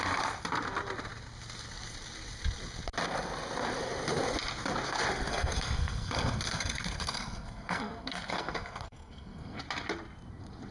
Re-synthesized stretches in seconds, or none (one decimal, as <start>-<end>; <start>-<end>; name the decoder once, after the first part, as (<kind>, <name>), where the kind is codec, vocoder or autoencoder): 5.3-9.6 (codec, SNAC)